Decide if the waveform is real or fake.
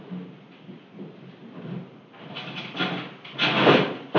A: real